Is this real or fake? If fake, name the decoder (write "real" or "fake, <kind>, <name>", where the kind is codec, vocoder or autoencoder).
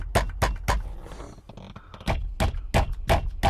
real